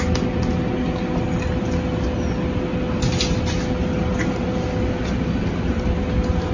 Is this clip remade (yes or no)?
no